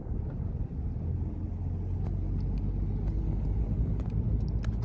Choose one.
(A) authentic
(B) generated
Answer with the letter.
A